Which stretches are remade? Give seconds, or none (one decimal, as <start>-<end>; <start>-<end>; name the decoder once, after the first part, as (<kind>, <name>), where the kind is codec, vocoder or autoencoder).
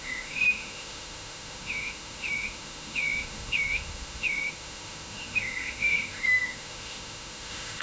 0.0-7.8 (autoencoder, DAC-VAE)